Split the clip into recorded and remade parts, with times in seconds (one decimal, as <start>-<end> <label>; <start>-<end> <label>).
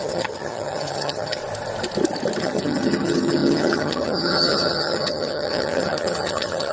0.0-1.4 remade; 1.4-2.4 recorded; 2.4-6.7 remade